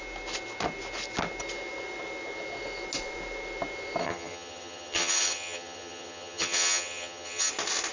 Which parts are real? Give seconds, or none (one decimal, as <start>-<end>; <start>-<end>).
0.0-4.0; 7.5-7.9